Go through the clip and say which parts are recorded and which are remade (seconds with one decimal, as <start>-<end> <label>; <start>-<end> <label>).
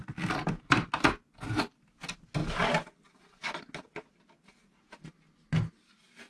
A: 0.0-6.3 recorded